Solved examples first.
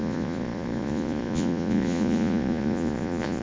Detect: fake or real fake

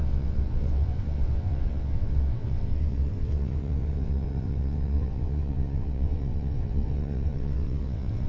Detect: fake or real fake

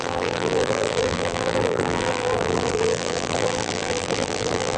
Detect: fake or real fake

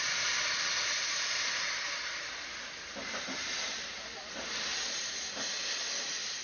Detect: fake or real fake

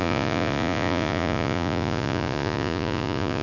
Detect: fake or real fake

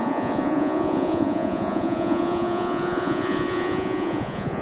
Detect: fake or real fake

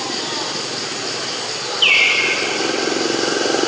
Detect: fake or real real